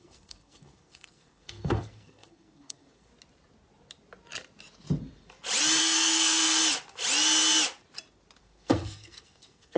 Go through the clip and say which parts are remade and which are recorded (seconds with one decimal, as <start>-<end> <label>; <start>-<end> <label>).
0.0-3.1 remade; 3.1-5.8 recorded; 5.8-6.6 remade; 6.6-8.4 recorded; 8.4-9.8 remade